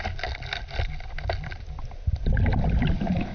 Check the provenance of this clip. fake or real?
real